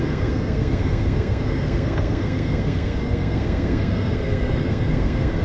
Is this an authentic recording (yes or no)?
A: no